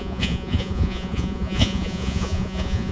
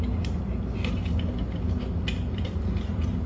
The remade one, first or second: first